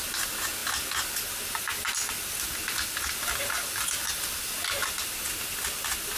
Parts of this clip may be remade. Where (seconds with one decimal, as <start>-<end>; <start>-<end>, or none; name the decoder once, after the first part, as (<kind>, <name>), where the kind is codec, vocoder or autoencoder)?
3.4-4.2 (vocoder, BigVGAN v2)